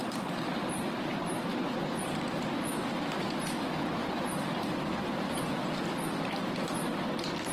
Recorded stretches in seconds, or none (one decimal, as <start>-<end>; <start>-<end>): 0.0-7.5